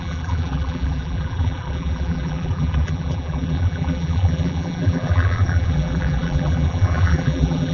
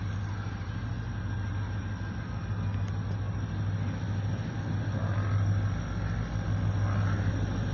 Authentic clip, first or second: second